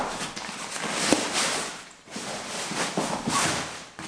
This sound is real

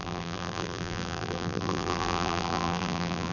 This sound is fake